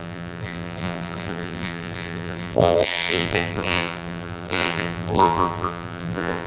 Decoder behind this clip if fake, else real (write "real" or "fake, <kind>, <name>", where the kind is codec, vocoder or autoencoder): fake, vocoder, BigVGAN v2